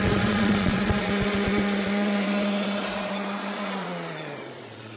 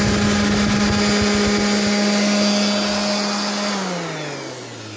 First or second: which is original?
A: second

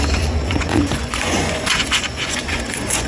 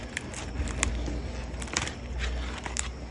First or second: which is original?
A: second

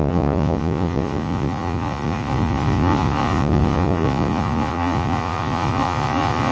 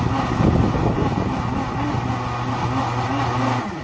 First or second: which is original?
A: second